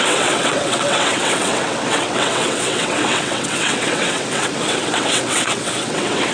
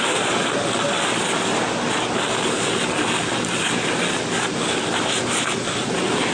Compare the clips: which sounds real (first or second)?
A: second